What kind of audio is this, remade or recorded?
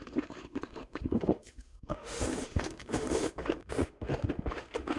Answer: remade